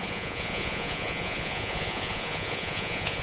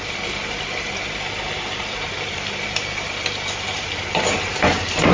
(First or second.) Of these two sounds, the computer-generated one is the first